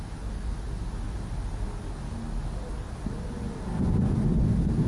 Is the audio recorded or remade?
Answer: recorded